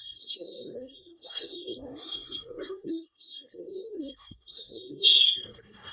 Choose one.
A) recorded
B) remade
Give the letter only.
B